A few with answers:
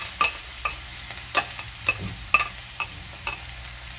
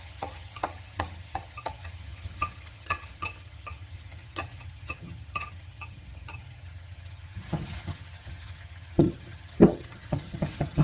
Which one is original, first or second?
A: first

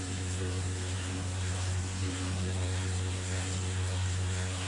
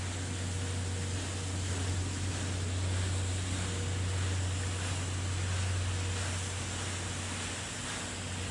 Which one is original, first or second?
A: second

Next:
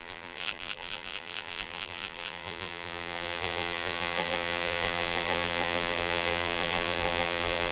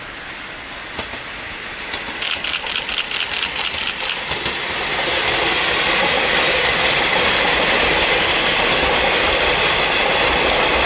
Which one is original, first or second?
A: second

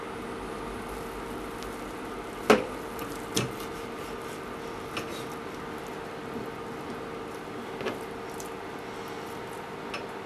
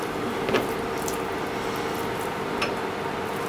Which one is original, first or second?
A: first